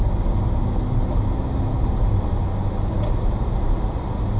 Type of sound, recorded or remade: recorded